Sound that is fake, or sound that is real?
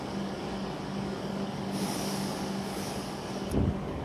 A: fake